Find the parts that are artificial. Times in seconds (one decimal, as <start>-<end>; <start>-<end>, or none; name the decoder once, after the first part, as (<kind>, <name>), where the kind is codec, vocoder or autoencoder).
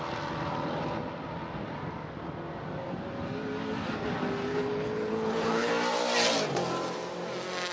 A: 4.5-5.7 (codec, HILCodec)